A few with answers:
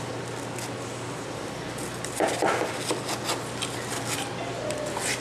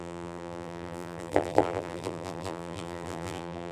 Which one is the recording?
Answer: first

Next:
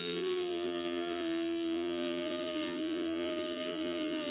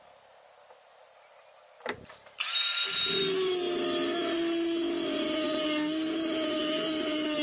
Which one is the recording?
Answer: second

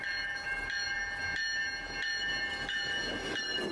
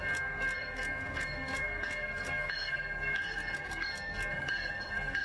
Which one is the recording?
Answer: first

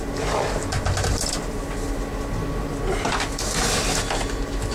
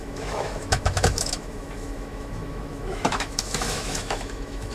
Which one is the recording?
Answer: first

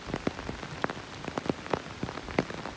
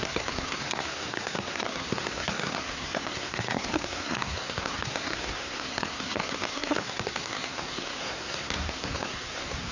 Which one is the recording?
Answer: first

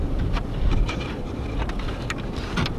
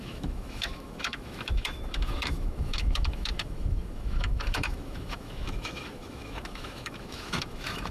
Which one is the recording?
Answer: first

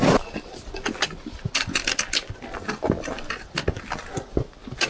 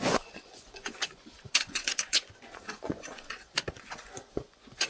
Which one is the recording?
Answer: first